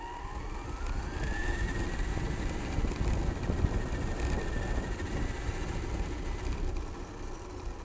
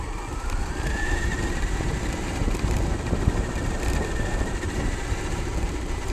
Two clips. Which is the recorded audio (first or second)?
first